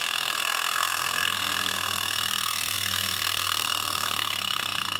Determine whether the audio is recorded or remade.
remade